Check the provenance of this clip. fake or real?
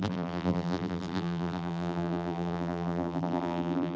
fake